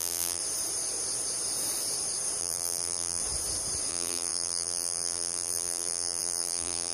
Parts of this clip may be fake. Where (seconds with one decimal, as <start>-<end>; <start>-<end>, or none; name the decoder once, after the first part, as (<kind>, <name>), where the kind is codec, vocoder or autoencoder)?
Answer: 0.0-0.4 (vocoder, BigVGAN v2); 2.4-3.2; 3.9-6.9